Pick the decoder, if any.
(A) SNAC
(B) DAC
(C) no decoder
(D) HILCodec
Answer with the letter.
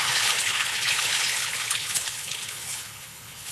D